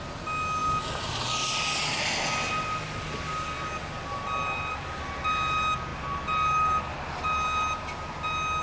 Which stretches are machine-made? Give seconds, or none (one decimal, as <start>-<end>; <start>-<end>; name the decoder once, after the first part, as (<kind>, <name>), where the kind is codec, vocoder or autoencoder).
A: none